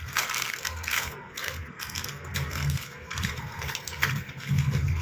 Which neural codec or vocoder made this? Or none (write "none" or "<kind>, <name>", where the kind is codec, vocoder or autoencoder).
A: codec, SNAC